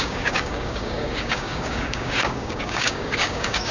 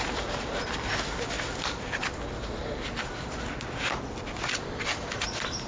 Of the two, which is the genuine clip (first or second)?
second